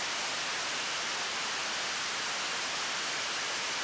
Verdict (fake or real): real